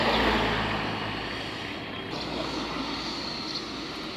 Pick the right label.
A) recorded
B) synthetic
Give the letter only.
A